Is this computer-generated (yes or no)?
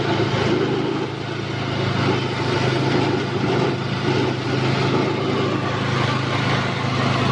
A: no